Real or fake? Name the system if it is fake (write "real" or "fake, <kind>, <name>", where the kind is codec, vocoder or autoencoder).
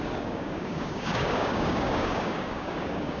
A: fake, codec, DAC